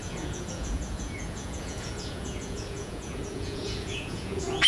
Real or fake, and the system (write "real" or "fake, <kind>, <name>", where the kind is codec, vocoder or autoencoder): fake, vocoder, Vocos